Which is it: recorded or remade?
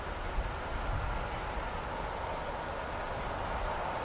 recorded